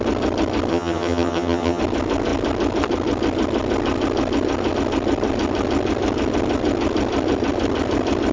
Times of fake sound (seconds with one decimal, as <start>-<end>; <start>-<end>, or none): 0.7-1.8